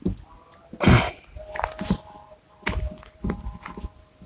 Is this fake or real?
real